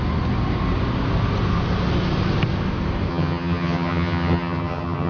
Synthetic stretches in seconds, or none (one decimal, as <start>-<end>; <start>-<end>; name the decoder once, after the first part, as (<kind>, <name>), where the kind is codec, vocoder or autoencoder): 3.1-5.1 (vocoder, HiFi-GAN)